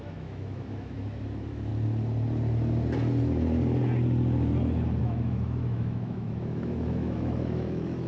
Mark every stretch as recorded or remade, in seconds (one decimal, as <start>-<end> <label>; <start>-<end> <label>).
0.0-1.7 remade; 1.7-5.0 recorded; 5.0-8.1 remade